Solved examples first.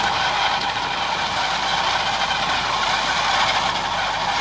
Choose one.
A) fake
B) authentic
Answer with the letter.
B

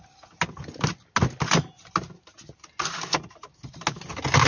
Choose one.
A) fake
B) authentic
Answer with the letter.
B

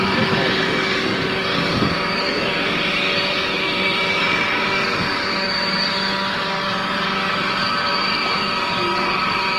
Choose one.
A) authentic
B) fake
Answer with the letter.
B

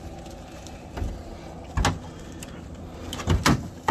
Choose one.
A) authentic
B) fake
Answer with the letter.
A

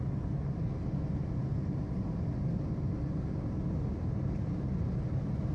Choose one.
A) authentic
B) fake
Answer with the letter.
A